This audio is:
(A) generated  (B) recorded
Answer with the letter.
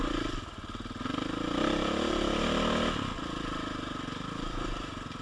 B